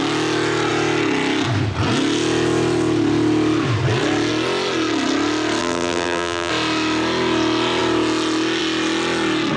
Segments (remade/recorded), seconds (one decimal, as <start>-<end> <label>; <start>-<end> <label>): 0.0-5.6 recorded; 5.6-6.5 remade; 6.5-9.6 recorded

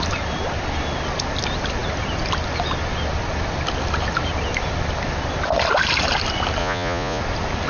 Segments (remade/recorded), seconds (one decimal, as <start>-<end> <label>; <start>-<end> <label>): 0.0-6.6 recorded; 6.6-7.2 remade; 7.2-7.7 recorded

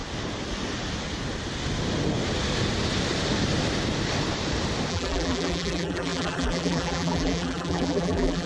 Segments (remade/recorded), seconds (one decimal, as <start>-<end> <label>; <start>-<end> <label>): 0.0-4.9 recorded; 4.9-8.5 remade

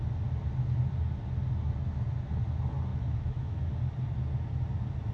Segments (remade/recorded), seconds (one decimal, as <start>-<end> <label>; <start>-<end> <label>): 0.0-2.9 recorded; 2.9-3.7 remade; 3.7-5.1 recorded

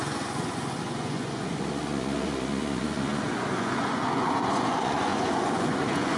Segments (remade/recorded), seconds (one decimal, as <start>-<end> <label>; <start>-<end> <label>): 0.0-6.2 remade